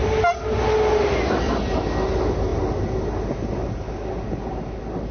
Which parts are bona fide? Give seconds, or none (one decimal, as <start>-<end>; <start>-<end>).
0.0-5.1